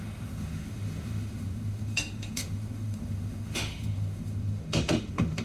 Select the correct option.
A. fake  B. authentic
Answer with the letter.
A